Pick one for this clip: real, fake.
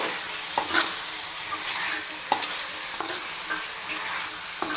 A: real